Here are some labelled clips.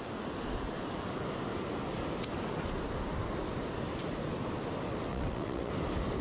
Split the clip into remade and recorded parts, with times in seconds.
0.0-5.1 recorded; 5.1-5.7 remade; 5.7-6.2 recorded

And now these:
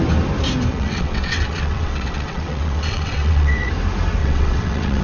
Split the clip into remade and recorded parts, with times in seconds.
0.0-0.7 recorded; 0.7-3.7 remade; 3.7-4.2 recorded; 4.2-5.0 remade

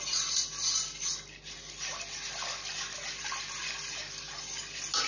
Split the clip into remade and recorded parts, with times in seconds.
0.0-5.1 recorded

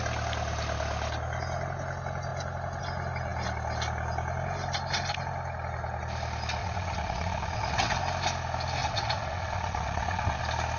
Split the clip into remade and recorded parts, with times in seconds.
0.0-6.6 recorded; 6.6-8.0 remade; 8.0-8.8 recorded; 8.8-10.4 remade; 10.4-10.8 recorded